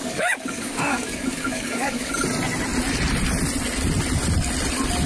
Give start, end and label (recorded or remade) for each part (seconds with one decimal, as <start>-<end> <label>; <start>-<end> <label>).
0.0-2.1 remade; 2.1-5.1 recorded